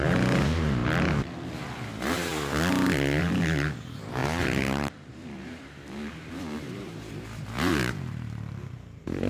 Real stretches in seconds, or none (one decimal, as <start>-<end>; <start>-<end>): 0.8-1.7; 2.3-3.2